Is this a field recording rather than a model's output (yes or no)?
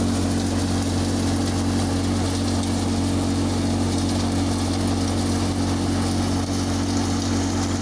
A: yes